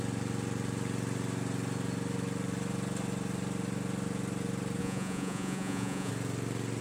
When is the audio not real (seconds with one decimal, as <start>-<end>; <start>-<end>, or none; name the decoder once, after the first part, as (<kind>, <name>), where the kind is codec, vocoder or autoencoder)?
4.8-6.1 (vocoder, Vocos)